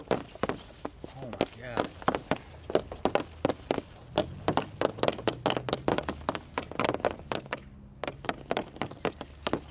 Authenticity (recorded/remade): recorded